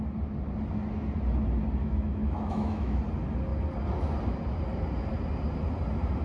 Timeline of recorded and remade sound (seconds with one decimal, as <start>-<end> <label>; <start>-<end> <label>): 0.0-1.8 recorded; 1.8-3.0 remade; 3.0-6.2 recorded